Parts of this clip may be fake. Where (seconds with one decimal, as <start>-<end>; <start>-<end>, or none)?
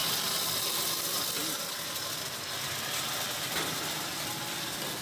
none